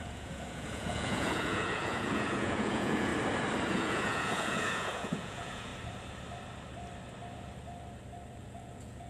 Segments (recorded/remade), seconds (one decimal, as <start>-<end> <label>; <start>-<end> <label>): 0.0-3.1 remade; 3.1-3.7 recorded; 3.7-5.7 remade; 5.7-8.4 recorded; 8.4-9.1 remade